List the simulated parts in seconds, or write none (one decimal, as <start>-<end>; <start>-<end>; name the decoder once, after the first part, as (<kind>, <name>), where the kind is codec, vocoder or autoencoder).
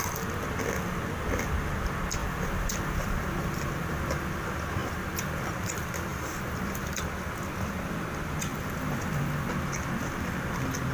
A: 2.2-4.0 (vocoder, BigVGAN v2); 4.8-5.3; 6.1-7.0; 8.5-9.5